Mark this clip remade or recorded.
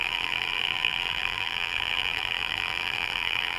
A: remade